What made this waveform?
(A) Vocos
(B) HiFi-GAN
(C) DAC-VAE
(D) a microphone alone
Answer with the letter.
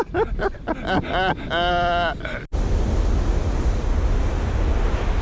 D